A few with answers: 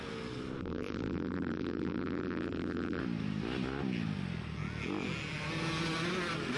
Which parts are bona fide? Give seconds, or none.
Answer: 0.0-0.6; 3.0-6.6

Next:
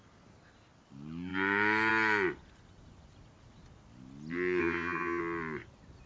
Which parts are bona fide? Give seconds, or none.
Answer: 0.0-4.6; 5.2-6.1

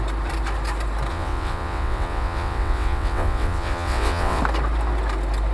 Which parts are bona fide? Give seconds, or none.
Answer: 0.0-1.1; 4.4-5.5

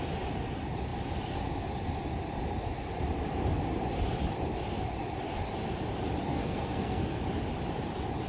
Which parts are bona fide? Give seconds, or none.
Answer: 0.0-6.3; 7.2-8.3

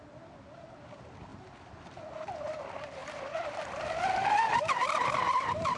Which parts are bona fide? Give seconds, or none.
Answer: 0.0-3.0

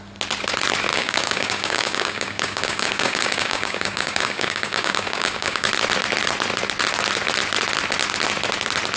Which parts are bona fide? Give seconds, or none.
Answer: 0.0-0.9; 5.7-9.0

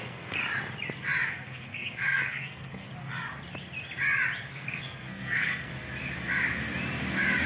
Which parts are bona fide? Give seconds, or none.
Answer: 0.4-1.3; 2.9-4.4; 5.7-7.5

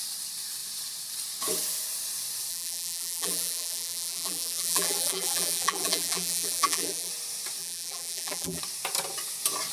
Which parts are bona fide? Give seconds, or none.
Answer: 0.0-2.5; 7.1-7.6; 8.6-9.7